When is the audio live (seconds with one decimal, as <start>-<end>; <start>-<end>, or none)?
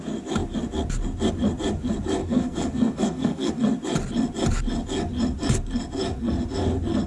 0.0-2.2; 3.5-7.1